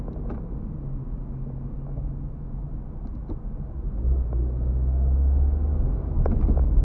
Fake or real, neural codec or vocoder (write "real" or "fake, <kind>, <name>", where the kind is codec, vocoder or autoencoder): real